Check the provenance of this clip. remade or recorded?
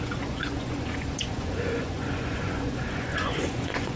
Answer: remade